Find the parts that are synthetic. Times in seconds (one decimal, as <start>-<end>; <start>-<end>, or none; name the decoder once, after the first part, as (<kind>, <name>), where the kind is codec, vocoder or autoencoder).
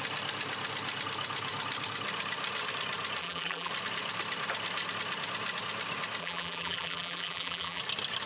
3.2-3.7 (vocoder, BigVGAN v2); 6.2-7.8